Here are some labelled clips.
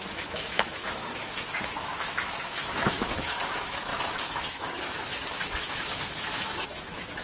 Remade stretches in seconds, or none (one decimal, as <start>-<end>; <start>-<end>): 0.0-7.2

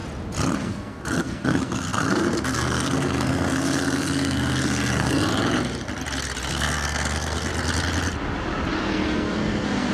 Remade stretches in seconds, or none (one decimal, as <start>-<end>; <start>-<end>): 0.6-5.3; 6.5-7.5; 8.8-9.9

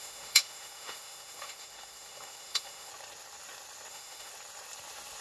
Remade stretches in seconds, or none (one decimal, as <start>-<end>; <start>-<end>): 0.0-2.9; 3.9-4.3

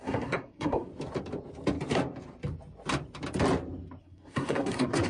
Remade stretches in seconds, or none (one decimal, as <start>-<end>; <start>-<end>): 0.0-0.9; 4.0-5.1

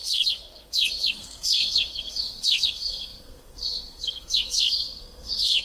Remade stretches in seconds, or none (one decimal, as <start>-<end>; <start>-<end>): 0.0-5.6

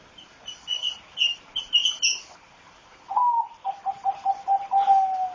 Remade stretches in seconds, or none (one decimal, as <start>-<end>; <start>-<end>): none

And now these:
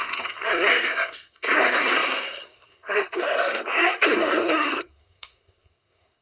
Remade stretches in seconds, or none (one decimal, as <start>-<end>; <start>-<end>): 0.0-6.2